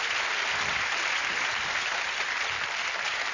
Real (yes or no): yes